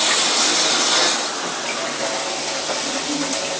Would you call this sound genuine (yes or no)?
yes